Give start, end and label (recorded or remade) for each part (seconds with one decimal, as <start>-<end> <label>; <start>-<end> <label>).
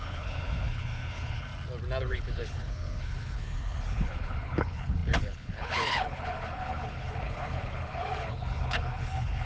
0.0-1.5 remade; 1.5-2.0 recorded; 2.0-9.5 remade